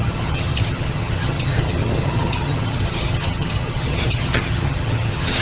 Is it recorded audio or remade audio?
remade